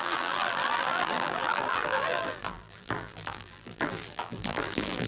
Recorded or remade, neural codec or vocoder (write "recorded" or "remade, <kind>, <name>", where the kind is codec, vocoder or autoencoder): remade, vocoder, BigVGAN v2